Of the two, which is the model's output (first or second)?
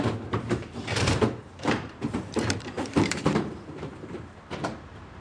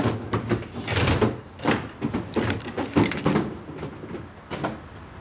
first